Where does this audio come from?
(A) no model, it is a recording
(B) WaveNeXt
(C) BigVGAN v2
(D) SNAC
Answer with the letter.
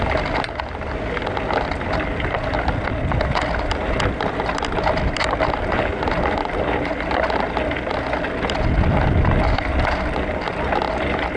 A